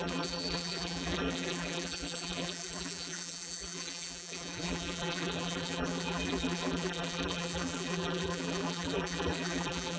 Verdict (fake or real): fake